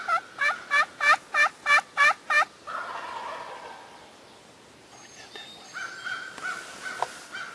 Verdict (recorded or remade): recorded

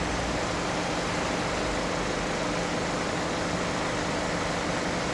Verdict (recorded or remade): recorded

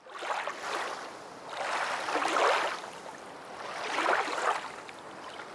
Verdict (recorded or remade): recorded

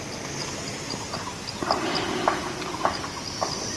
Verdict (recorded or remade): recorded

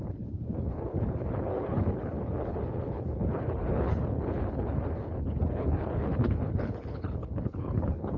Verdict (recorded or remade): remade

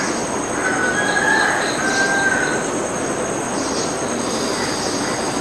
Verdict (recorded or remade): recorded